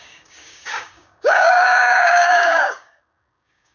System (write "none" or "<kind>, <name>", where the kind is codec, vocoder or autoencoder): codec, DAC